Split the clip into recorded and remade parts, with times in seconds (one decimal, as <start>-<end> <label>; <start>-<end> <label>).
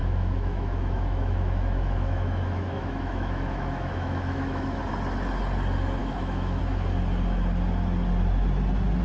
0.0-4.8 remade; 4.8-6.0 recorded; 6.0-6.6 remade; 6.6-9.0 recorded